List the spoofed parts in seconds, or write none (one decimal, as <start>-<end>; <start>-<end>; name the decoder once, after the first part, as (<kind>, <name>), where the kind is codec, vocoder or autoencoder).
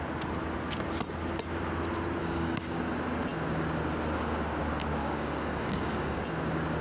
2.2-2.8 (codec, DAC); 5.0-6.2